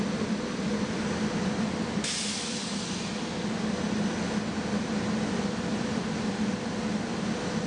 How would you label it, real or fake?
real